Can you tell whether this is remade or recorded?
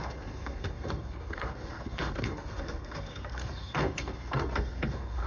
remade